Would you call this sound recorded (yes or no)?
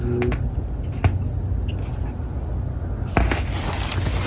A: yes